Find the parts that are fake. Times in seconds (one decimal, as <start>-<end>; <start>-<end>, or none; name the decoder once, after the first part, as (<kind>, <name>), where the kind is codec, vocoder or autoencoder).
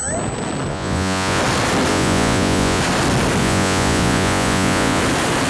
0.7-1.4 (vocoder, Vocos); 1.9-2.8; 3.4-5.0